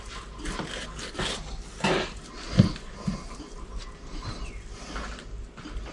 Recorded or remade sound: recorded